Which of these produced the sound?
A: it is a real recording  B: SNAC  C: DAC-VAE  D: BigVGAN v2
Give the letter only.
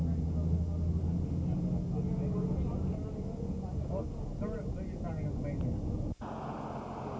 A